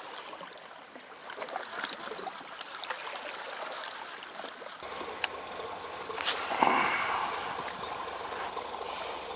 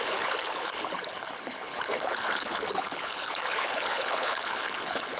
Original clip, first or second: first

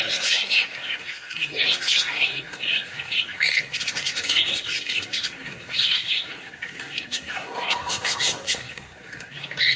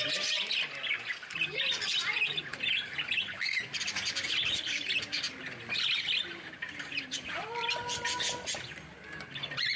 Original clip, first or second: second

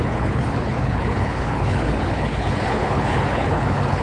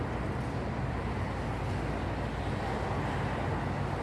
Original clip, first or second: second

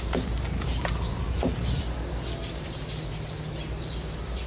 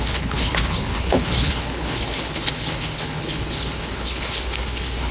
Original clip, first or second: first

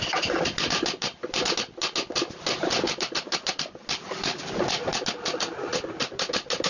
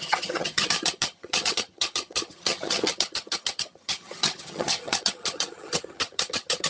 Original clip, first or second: first